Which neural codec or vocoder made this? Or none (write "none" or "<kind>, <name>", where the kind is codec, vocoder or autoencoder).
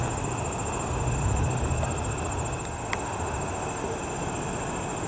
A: none